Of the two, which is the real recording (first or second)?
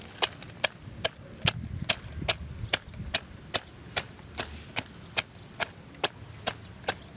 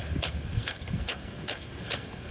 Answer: first